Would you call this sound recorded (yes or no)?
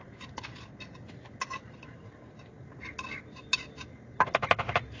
yes